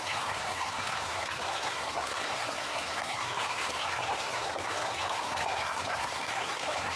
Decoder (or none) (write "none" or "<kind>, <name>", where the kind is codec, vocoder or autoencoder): codec, SNAC